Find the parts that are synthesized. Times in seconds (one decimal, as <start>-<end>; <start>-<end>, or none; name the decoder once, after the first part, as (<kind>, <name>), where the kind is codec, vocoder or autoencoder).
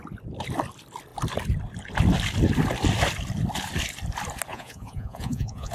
4.5-5.7 (vocoder, Vocos)